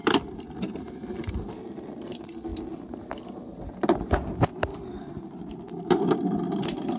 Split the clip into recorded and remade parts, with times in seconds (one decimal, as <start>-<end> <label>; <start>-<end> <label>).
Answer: 0.0-1.6 remade; 1.6-7.0 recorded